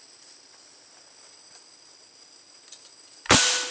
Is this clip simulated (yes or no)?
no